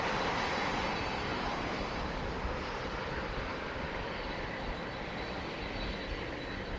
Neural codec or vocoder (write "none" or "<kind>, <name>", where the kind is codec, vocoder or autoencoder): none